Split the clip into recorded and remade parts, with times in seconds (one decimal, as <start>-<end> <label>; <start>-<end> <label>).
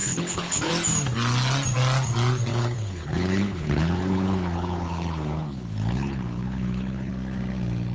0.0-0.7 remade; 0.7-2.5 recorded; 2.5-7.1 remade; 7.1-7.9 recorded